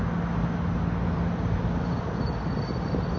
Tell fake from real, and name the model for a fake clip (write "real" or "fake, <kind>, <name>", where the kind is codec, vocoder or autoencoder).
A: real